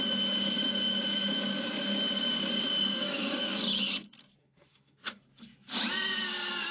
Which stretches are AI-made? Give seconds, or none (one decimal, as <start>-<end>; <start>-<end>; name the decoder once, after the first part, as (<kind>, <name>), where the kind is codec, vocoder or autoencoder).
2.8-3.4 (autoencoder, DAC-VAE); 4.4-5.2